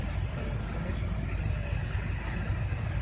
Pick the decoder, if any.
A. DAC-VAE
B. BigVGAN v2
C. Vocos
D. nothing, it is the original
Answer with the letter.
D